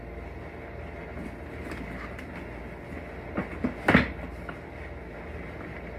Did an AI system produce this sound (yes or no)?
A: no